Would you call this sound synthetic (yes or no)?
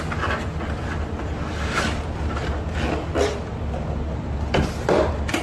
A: no